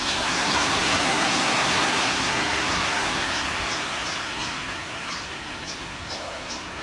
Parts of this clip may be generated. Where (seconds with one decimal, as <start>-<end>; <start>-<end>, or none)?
0.0-6.8